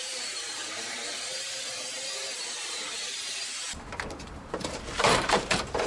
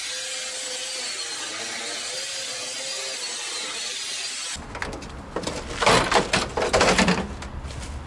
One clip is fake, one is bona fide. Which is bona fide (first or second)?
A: second